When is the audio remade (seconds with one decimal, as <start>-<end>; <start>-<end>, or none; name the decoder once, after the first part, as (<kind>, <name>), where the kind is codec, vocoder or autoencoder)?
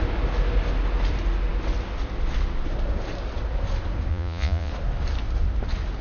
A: 4.1-4.7 (vocoder, Vocos)